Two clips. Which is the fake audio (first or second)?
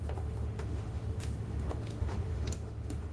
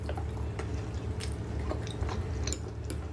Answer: first